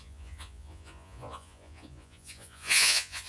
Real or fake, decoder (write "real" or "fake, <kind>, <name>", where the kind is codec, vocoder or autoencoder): fake, vocoder, Vocos